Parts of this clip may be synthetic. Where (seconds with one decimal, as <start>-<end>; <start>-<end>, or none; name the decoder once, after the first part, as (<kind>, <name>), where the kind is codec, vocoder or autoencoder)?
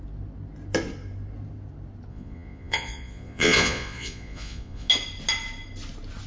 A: 2.1-4.9 (vocoder, Vocos)